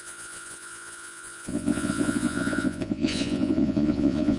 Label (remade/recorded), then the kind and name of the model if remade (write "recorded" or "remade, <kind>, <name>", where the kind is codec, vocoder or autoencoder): remade, vocoder, Vocos